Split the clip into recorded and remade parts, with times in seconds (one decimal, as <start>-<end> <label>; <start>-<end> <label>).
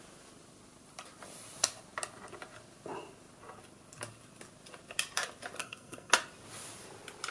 0.0-5.6 recorded; 5.6-6.1 remade; 6.1-7.3 recorded